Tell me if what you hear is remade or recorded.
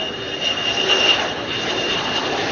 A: recorded